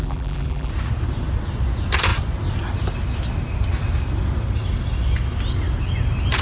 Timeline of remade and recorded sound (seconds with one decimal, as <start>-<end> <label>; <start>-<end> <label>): 0.0-0.7 remade; 0.7-6.4 recorded